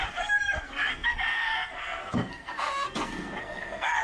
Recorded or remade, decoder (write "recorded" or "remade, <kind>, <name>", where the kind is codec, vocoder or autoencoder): remade, codec, SNAC